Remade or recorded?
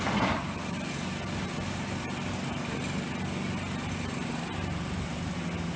recorded